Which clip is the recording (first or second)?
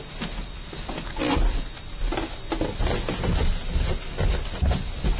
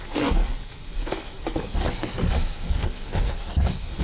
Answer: first